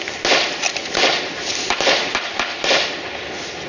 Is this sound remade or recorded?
recorded